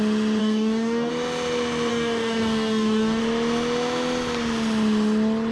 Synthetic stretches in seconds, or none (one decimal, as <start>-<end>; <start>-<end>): 0.4-1.1; 1.9-3.2